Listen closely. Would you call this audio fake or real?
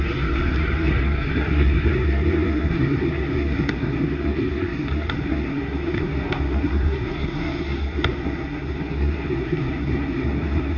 fake